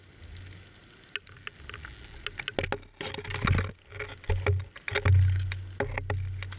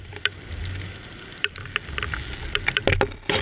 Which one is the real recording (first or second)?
first